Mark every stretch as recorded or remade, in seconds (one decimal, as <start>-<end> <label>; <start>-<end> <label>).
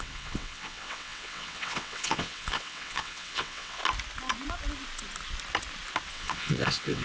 0.0-3.8 remade; 3.8-6.1 recorded; 6.1-7.0 remade